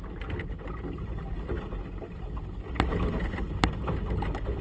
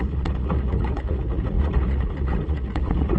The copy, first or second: second